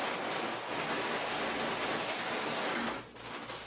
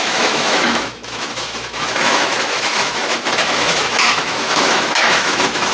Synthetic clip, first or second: second